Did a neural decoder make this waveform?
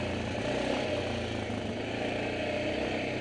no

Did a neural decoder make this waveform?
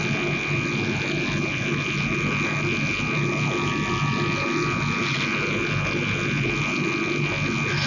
no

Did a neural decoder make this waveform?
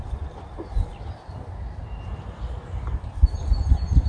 no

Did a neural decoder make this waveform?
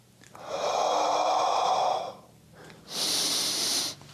no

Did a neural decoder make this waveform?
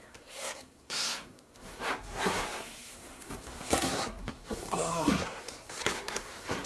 yes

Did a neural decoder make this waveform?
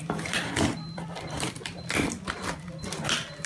yes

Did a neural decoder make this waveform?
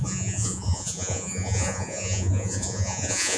yes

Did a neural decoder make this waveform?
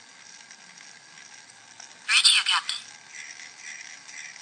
no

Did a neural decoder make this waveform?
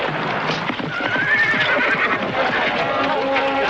no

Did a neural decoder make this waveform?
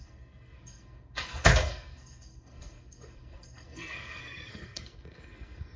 yes